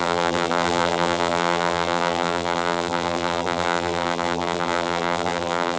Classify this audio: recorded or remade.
remade